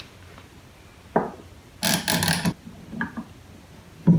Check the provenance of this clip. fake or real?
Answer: real